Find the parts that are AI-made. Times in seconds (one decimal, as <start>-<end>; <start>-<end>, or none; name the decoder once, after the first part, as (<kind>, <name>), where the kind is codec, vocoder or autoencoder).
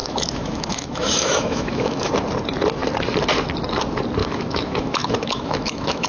0.0-2.1 (autoencoder, DAC-VAE); 4.2-6.1